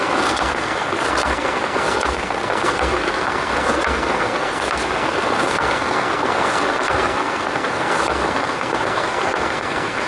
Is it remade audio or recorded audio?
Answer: remade